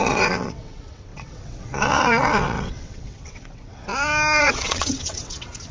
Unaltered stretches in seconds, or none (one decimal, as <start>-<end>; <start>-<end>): 3.9-4.4